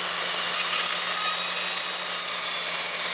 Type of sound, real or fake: real